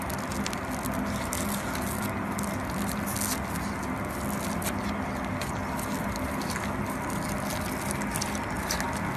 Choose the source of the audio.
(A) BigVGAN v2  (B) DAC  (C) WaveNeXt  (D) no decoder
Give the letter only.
D